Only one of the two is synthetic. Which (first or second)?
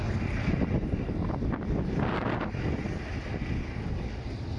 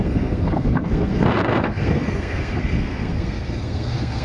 second